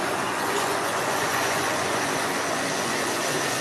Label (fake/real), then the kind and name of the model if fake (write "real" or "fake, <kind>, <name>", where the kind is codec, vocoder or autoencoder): fake, vocoder, Vocos